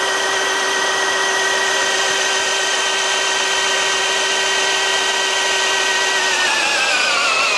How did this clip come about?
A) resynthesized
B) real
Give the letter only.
B